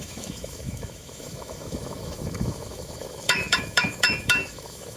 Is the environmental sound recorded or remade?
remade